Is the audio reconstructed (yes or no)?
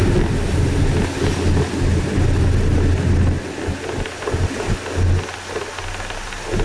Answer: no